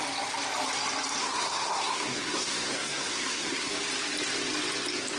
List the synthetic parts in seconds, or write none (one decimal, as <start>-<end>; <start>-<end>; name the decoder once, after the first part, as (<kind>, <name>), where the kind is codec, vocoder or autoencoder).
1.2-3.7 (codec, SNAC)